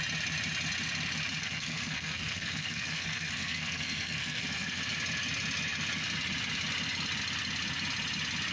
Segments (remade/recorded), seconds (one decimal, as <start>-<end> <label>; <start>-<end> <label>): 0.0-1.4 recorded; 1.4-4.8 remade; 4.8-8.5 recorded